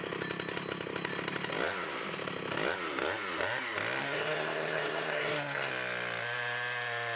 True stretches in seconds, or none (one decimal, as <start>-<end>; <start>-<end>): 0.0-4.0; 5.7-7.2

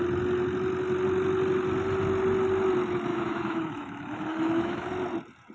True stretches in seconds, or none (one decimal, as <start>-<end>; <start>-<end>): 0.0-3.1; 4.9-5.5

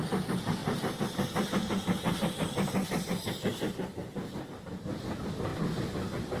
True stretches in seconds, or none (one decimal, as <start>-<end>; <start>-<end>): 0.6-4.4; 5.5-6.4

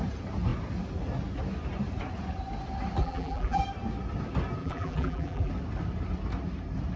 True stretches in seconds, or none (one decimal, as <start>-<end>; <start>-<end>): 0.0-3.0; 3.6-4.6; 5.5-7.0

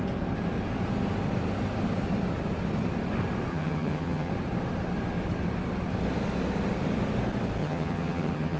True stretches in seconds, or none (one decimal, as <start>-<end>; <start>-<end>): 0.0-3.5; 4.3-7.6